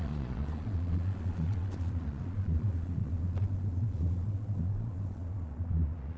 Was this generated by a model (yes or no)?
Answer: yes